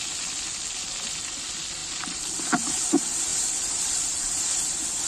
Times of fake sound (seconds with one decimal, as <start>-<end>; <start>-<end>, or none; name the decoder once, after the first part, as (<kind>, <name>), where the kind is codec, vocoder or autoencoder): 1.8-2.9 (vocoder, BigVGAN v2); 3.3-3.9